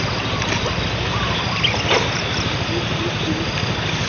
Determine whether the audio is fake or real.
real